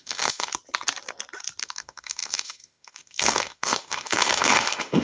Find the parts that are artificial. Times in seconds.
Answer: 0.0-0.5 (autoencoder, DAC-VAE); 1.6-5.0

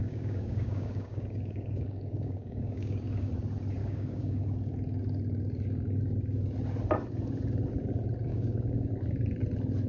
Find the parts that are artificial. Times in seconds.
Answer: 0.0-3.3 (codec, DAC); 3.8-4.4; 8.3-8.9

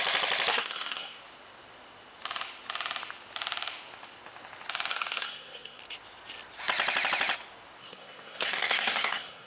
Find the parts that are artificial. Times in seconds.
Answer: 0.5-1.2 (codec, SNAC); 4.9-5.8; 7.8-9.5

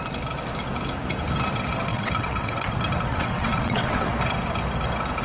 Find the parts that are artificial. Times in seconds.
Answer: 1.9-2.7 (vocoder, WaveNeXt); 3.1-4.1